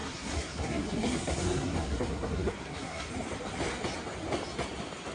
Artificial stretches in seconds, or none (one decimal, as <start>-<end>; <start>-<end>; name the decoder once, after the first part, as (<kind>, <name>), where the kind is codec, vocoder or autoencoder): 0.0-3.1 (codec, SNAC)